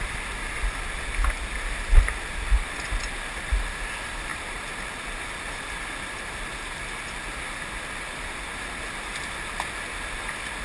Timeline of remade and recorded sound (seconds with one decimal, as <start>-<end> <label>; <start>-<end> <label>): 0.0-10.6 recorded